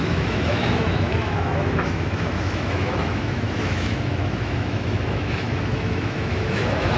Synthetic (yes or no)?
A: yes